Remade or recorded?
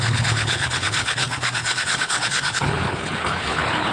remade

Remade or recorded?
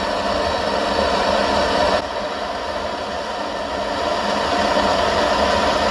recorded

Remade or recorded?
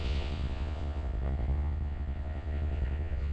remade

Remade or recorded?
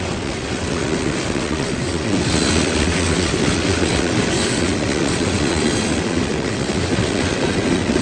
remade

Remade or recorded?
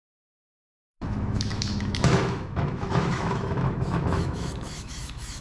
remade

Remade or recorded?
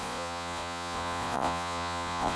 remade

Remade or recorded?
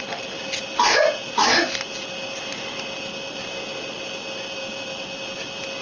recorded